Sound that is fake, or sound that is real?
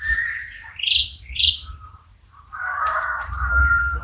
fake